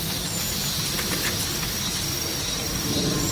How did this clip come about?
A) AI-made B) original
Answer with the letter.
B